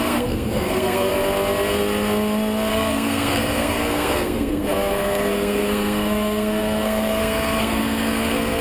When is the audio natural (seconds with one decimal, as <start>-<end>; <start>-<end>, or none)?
1.1-2.7